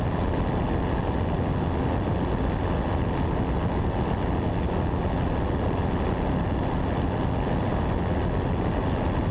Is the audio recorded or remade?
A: recorded